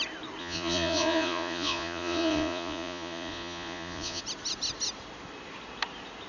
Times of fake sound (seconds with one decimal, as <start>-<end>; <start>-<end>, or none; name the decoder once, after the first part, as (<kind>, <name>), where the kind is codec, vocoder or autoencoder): 0.4-4.2 (vocoder, Vocos)